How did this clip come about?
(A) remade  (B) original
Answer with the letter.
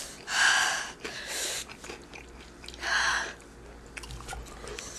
B